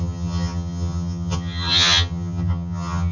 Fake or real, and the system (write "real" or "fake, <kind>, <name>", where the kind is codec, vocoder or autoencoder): fake, vocoder, HiFi-GAN